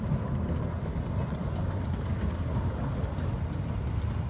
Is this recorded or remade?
recorded